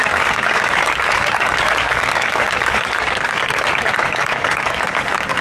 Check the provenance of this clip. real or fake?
fake